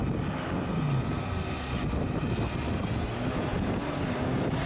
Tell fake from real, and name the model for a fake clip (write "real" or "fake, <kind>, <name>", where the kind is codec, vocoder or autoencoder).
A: real